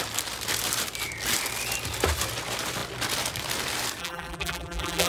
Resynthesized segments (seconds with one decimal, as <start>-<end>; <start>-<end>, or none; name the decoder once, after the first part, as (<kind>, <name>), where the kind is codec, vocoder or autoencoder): 4.0-5.1 (vocoder, BigVGAN v2)